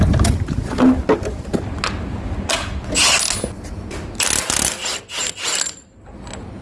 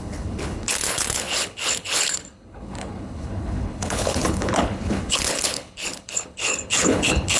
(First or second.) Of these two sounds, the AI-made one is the second